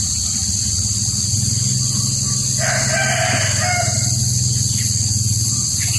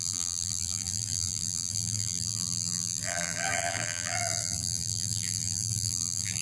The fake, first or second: second